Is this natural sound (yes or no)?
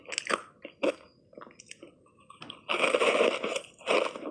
yes